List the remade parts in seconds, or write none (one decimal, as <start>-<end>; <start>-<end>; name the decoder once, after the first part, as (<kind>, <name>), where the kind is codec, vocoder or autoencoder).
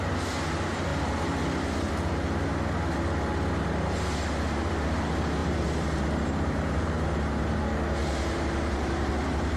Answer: 5.4-7.6 (vocoder, BigVGAN v2); 8.0-9.1